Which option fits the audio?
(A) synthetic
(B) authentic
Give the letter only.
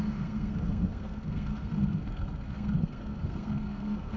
A